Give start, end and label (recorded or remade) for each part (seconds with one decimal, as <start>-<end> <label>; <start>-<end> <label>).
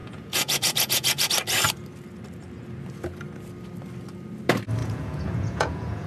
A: 0.0-1.3 remade; 1.3-4.8 recorded; 4.8-6.1 remade